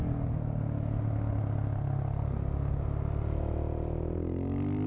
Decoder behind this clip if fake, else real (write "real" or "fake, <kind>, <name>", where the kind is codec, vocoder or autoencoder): real